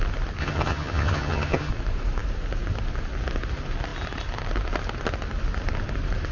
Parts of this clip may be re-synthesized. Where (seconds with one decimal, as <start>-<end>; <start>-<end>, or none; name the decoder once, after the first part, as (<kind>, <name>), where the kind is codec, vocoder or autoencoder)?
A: 0.4-1.7 (vocoder, HiFi-GAN)